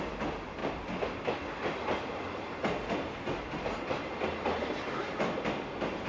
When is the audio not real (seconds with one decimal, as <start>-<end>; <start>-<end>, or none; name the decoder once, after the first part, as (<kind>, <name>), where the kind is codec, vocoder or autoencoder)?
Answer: none

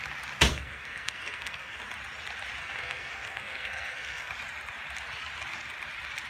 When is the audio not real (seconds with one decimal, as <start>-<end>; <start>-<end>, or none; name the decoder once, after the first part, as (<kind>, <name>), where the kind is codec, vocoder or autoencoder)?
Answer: 0.5-1.8 (codec, SNAC); 2.6-4.3